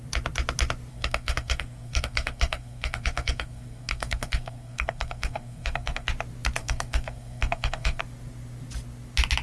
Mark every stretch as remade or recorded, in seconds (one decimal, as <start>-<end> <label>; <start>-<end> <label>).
0.0-0.9 recorded; 0.9-6.1 remade; 6.1-6.6 recorded; 6.6-8.0 remade; 8.0-9.4 recorded